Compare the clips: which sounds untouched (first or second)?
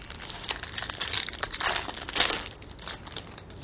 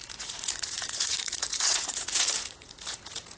first